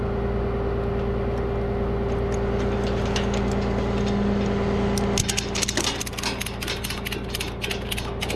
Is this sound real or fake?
real